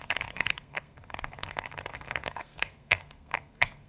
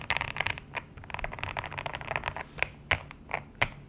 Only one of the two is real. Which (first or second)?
second